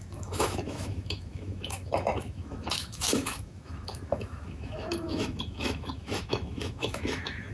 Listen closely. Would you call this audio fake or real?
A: fake